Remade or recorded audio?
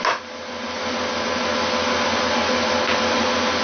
recorded